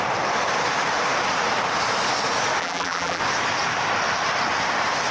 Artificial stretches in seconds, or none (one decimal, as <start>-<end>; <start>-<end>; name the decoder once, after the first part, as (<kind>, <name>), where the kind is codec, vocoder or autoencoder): 2.6-3.2 (vocoder, BigVGAN v2)